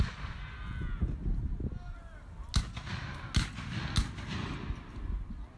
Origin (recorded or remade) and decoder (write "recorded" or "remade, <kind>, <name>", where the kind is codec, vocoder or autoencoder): recorded